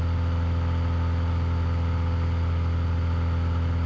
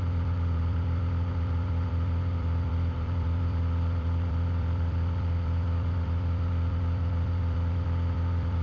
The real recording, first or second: first